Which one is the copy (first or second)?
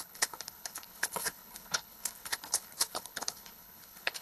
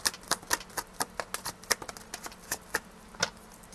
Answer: first